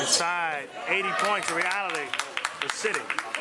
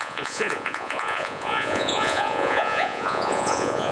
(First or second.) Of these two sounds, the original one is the first